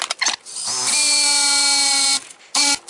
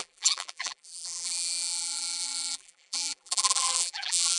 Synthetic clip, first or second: second